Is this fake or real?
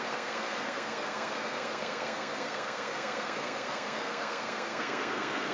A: fake